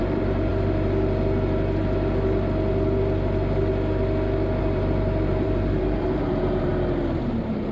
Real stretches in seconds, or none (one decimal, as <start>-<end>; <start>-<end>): 0.5-4.6; 6.7-7.2

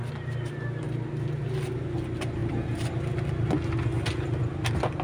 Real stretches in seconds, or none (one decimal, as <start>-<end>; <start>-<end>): 0.0-5.0

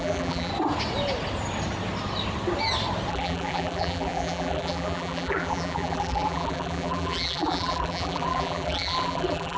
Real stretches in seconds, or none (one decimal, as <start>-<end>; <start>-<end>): 0.5-3.1